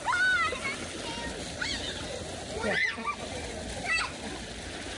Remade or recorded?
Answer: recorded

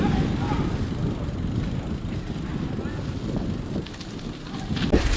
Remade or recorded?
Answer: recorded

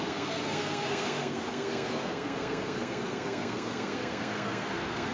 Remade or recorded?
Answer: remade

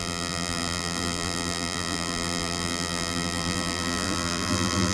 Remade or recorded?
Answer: remade